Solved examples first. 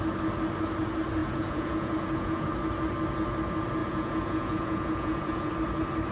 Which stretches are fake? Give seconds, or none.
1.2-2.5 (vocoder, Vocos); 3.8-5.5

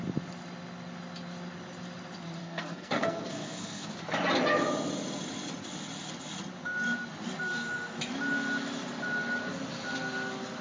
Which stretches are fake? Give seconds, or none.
2.4-3.9 (codec, SNAC)

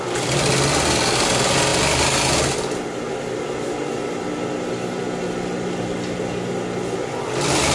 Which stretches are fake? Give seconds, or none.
none

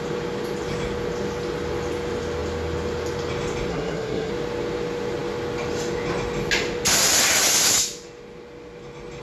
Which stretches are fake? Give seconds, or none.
3.7-4.3 (codec, SNAC)

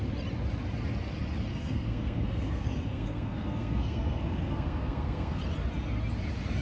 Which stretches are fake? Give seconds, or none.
1.5-5.4 (codec, SNAC)

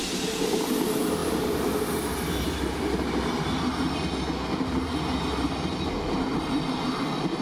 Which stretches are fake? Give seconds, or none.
1.2-2.0 (vocoder, BigVGAN v2)

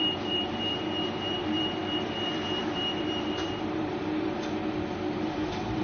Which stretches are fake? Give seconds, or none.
0.0-5.8 (vocoder, BigVGAN v2)

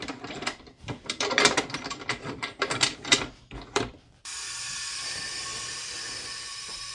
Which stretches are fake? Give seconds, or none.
0.0-5.5 (vocoder, BigVGAN v2); 6.2-6.9